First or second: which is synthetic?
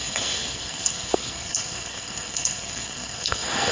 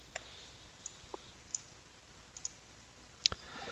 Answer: first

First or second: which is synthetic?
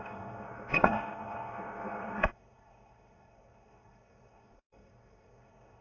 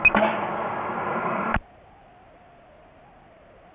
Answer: first